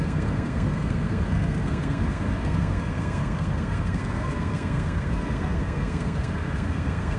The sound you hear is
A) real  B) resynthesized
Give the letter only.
B